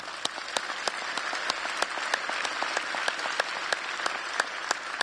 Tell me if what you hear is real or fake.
real